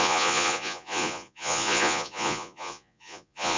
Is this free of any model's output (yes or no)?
no